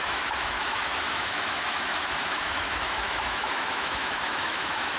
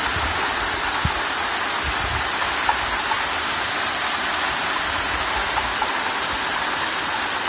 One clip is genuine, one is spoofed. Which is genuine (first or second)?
second